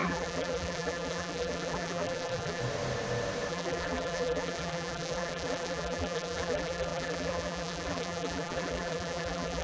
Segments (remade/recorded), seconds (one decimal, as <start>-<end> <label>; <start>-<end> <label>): 0.0-2.6 remade; 2.6-3.5 recorded; 3.5-9.6 remade